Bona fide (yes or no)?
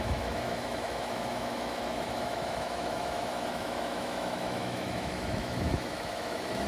no